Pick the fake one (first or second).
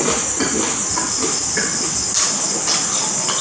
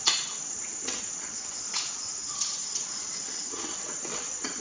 second